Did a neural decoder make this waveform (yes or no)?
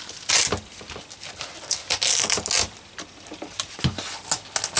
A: no